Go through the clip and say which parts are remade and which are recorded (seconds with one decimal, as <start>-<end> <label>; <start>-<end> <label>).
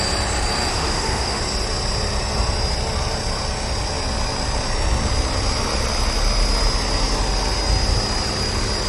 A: 0.0-0.7 recorded; 0.7-1.4 remade; 1.4-8.9 recorded